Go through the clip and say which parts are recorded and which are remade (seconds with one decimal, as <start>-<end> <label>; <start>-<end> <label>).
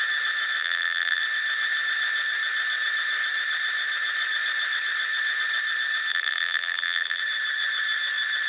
0.0-0.6 recorded; 0.6-1.2 remade; 1.2-6.1 recorded; 6.1-7.2 remade; 7.2-8.5 recorded